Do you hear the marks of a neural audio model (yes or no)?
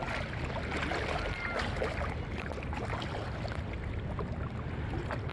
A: no